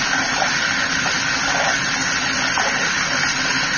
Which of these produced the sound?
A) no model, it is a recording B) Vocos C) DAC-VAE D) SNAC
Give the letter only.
A